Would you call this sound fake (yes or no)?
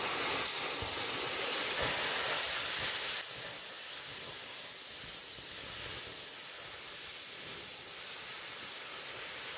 no